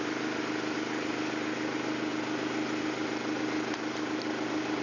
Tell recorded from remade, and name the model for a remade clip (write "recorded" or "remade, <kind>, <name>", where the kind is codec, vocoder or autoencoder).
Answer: recorded